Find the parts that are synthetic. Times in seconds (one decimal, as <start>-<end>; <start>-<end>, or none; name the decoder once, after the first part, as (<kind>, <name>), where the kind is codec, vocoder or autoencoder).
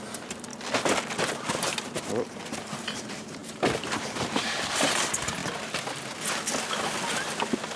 0.0-0.5 (vocoder, BigVGAN v2); 1.5-5.4